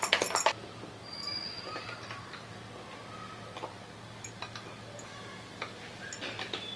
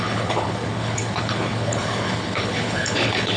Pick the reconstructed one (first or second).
second